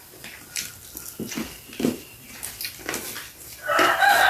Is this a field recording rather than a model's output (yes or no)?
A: yes